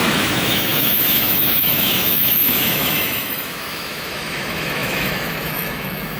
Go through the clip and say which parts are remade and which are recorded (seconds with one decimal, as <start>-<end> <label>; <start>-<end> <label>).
0.0-6.2 remade